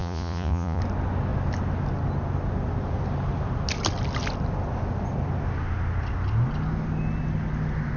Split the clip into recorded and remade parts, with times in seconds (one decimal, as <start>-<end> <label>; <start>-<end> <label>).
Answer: 0.0-0.8 remade; 0.8-8.0 recorded